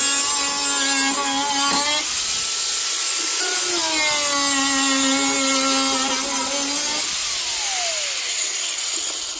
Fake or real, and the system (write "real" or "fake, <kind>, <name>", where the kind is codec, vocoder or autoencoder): real